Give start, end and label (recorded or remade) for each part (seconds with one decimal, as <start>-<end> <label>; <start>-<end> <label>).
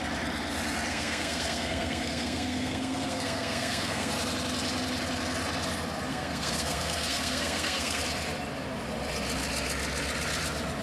0.0-0.9 recorded; 0.9-4.1 remade; 4.1-6.1 recorded; 6.1-8.0 remade; 8.0-10.8 recorded